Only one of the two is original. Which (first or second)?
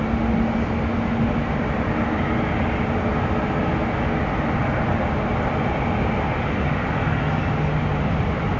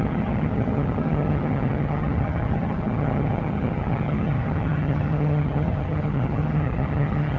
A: first